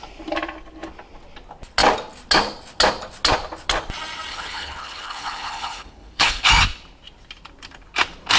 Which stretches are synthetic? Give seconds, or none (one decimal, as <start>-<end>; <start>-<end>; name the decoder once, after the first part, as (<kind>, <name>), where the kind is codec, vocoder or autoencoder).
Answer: 4.3-6.5 (codec, HILCodec)